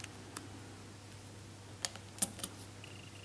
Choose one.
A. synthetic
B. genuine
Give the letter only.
B